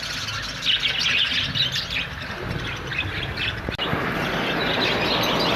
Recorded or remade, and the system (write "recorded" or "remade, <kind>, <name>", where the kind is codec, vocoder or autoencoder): recorded